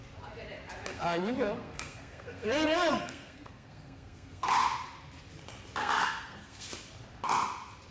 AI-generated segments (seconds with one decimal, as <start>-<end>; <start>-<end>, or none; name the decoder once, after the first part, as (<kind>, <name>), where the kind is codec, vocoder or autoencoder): 0.9-4.5 (codec, SNAC); 5.8-6.7